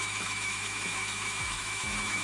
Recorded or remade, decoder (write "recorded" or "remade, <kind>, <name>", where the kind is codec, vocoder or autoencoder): remade, autoencoder, DAC-VAE